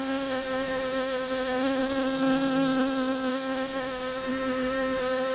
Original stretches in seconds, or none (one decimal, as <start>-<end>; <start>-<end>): 1.8-3.3